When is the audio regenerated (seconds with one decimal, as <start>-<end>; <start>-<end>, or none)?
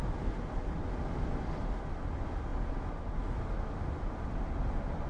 none